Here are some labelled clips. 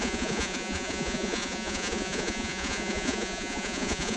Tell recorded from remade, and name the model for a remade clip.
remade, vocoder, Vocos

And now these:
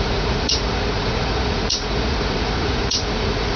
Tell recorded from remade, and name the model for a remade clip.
remade, vocoder, Vocos